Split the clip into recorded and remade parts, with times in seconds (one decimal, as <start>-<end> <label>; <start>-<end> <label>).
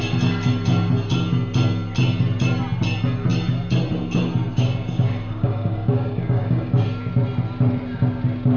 0.0-4.5 recorded; 4.5-6.7 remade; 6.7-8.6 recorded